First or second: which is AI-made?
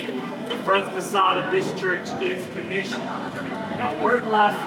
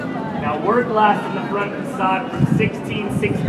first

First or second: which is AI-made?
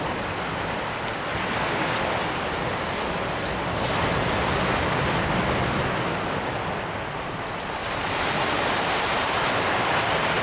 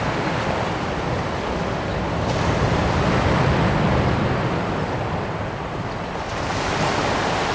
second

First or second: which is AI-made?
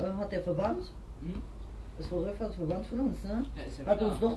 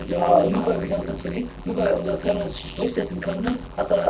second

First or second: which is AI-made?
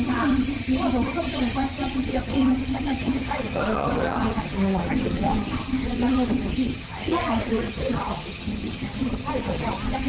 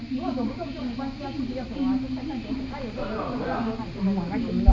first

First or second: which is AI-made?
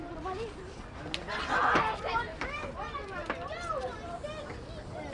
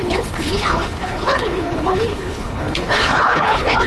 second